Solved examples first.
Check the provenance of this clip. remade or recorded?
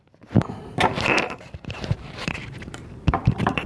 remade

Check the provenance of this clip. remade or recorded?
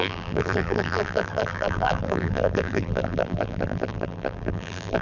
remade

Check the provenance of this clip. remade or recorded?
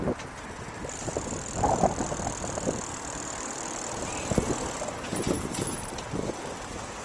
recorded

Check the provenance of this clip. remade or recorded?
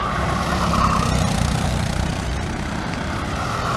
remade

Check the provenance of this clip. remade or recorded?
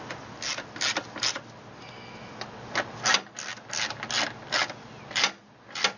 recorded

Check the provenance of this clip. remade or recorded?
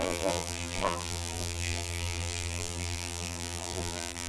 remade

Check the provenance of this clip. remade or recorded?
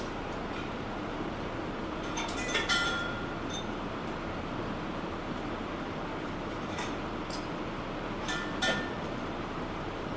remade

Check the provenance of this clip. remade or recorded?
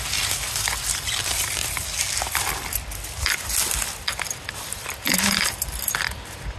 recorded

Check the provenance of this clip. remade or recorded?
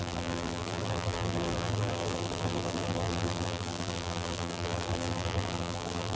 remade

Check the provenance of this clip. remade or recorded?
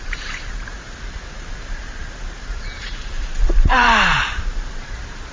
remade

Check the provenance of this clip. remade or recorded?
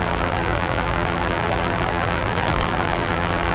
remade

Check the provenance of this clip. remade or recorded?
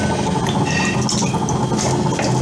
recorded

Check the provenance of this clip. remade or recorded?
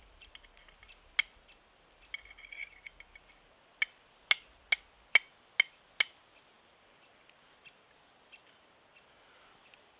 recorded